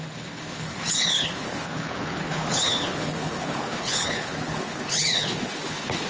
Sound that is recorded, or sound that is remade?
remade